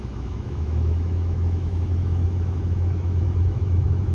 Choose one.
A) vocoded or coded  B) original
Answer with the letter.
A